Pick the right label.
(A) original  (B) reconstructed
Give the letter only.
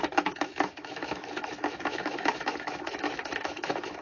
B